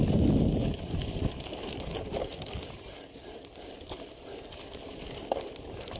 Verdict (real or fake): real